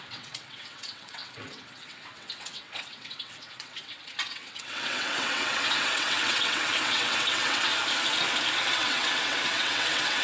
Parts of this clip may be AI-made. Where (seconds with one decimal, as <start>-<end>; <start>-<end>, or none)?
0.0-7.7; 8.7-10.2